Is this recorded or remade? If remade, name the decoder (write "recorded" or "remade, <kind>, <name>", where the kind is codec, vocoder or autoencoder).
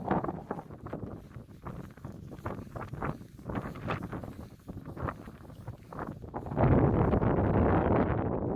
recorded